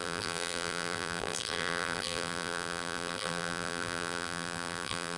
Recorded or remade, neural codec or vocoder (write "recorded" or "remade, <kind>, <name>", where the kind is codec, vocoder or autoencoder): remade, vocoder, BigVGAN v2